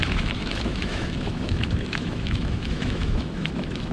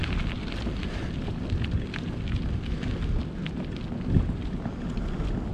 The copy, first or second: first